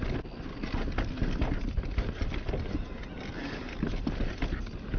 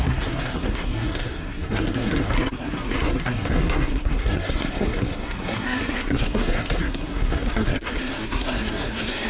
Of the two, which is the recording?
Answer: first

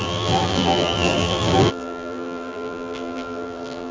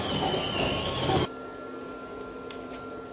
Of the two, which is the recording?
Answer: second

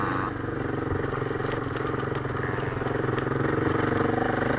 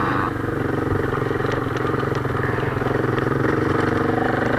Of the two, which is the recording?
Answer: first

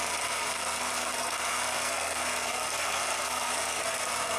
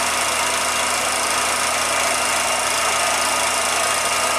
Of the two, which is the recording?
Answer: second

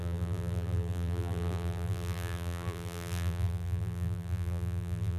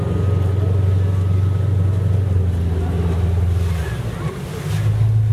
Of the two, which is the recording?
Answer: second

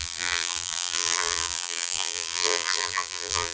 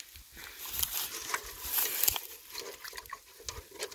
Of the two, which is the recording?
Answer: second